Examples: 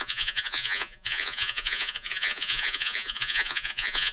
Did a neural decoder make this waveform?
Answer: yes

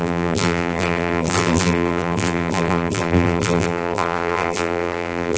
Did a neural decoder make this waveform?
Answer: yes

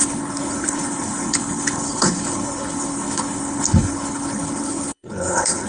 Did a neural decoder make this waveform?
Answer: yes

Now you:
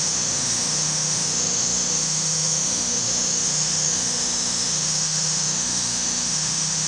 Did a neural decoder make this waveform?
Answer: yes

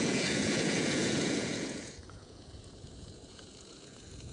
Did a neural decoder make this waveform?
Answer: yes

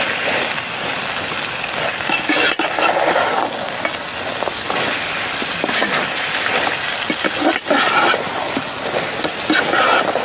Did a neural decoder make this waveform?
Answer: no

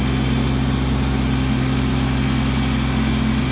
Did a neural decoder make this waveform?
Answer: no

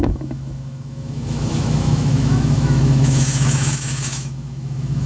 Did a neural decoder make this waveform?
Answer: yes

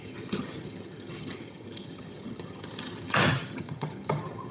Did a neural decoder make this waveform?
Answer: yes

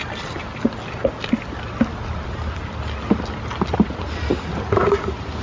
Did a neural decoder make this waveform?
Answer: no